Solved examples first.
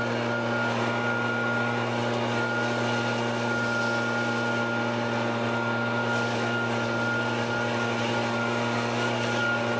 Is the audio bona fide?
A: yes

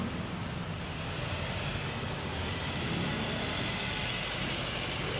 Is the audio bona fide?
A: yes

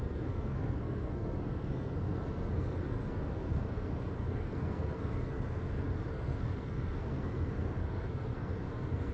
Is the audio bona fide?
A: no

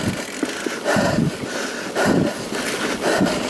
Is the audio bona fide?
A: yes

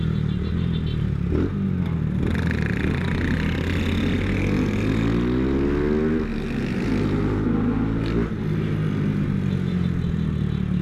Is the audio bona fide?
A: yes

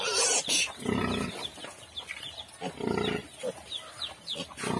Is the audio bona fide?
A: yes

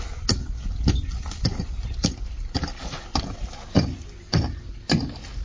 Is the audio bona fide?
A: yes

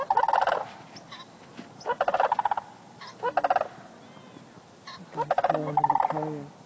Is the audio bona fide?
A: yes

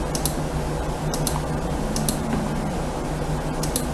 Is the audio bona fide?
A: yes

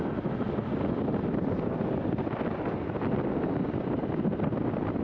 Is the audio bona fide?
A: yes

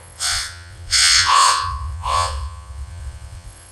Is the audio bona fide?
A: no